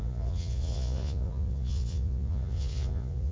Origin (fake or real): fake